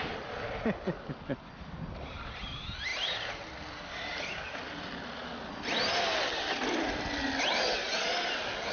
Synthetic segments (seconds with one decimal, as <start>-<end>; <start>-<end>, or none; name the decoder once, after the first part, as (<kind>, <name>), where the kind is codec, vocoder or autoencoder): none